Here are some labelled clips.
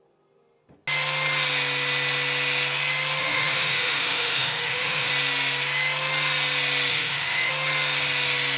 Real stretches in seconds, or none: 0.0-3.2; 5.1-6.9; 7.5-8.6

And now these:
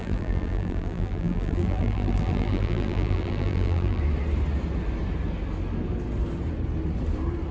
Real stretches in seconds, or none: 4.0-7.5

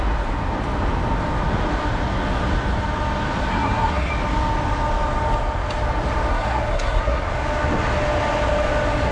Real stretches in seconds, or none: 0.0-3.5; 4.1-6.3; 7.3-9.1

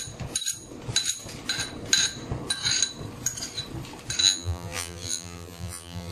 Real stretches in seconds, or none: 0.0-4.2

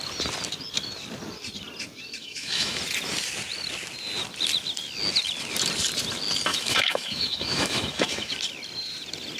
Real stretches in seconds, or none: 0.0-2.2; 2.8-6.5; 8.3-9.4

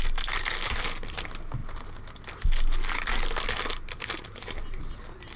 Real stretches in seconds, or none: 0.0-5.4

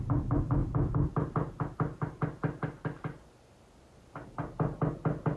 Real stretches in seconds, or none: 0.0-5.4

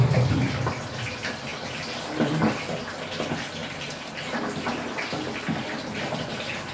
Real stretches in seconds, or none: 0.0-6.7